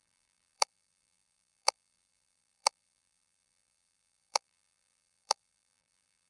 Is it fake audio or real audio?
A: fake